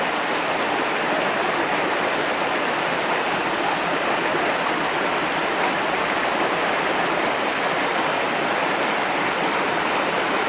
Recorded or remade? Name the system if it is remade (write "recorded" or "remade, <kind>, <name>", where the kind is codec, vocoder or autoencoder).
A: recorded